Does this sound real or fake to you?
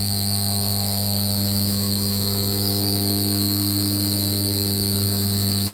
fake